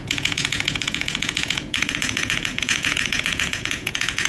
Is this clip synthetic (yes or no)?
yes